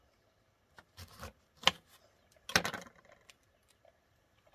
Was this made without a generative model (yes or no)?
yes